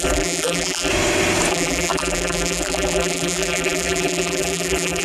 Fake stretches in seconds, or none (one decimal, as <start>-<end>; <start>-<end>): 0.0-0.9; 1.5-5.0